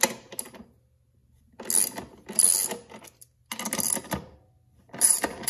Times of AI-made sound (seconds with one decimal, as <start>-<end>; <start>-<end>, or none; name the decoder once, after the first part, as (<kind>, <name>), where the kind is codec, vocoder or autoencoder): none